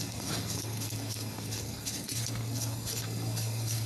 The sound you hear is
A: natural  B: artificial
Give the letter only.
B